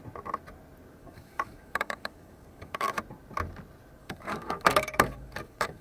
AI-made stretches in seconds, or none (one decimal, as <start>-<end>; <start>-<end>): 1.0-3.0; 4.0-5.8